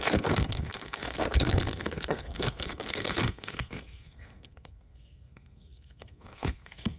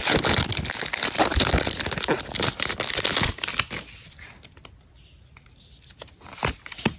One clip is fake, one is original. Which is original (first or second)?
second